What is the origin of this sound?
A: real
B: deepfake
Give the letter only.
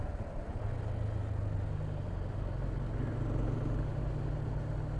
A